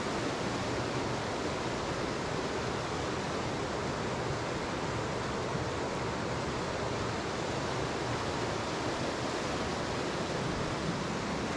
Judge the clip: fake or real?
real